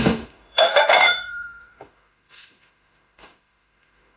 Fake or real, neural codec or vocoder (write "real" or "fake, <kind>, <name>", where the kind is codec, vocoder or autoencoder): fake, autoencoder, DAC-VAE